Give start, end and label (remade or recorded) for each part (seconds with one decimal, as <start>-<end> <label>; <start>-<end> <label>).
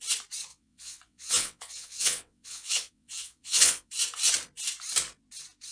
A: 0.0-0.5 recorded; 0.5-3.9 remade; 3.9-5.7 recorded